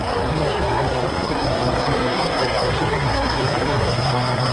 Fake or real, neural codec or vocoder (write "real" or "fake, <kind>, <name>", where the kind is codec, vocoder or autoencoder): fake, codec, SNAC